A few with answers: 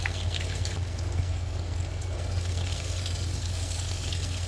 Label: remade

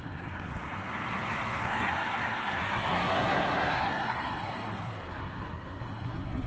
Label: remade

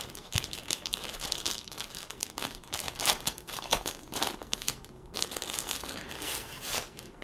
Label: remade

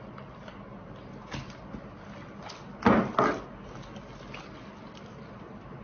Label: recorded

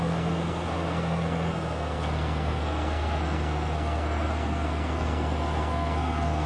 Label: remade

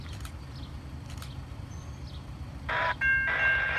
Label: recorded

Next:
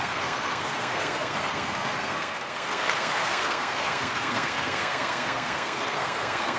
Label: remade